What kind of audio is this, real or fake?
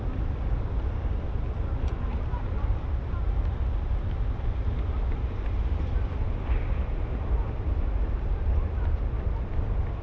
real